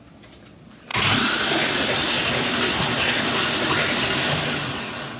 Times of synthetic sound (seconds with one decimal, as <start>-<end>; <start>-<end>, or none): none